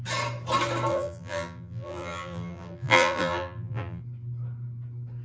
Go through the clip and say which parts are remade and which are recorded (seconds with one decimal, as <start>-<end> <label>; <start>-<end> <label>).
0.0-0.9 recorded; 0.9-4.0 remade; 4.0-5.2 recorded